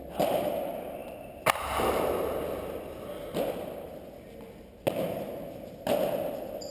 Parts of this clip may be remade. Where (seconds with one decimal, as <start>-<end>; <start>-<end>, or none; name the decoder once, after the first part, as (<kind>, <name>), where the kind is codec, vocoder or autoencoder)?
none